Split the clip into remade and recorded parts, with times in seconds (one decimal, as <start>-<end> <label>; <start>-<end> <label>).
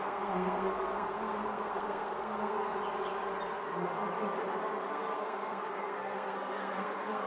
0.0-2.7 remade; 2.7-4.9 recorded; 4.9-7.3 remade